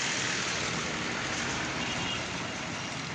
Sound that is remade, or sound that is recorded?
recorded